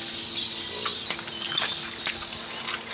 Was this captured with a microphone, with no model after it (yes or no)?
yes